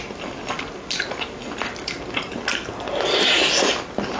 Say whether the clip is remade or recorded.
recorded